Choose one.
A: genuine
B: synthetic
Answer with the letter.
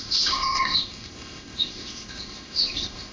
B